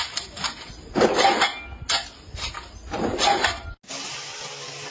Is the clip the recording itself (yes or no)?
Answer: yes